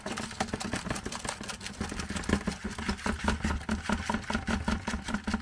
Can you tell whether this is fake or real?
real